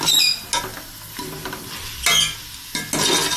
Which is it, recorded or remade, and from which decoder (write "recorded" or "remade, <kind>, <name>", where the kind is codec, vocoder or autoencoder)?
recorded